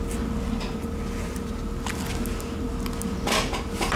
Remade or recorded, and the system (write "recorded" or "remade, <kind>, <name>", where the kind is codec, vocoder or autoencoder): recorded